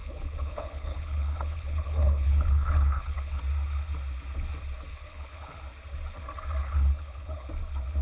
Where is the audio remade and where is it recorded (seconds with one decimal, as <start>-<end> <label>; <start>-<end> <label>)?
0.0-3.4 remade; 3.4-4.9 recorded; 4.9-5.6 remade; 5.6-6.6 recorded; 6.6-7.5 remade; 7.5-8.0 recorded